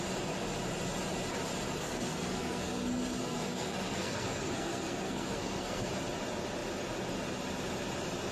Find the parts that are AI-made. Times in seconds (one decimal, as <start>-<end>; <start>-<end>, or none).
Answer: 1.8-5.9